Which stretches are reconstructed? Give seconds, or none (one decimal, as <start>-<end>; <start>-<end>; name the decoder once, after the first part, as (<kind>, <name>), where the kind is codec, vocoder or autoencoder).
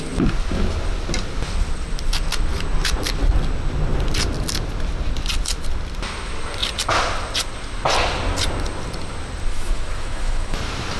9.5-10.6 (autoencoder, DAC-VAE)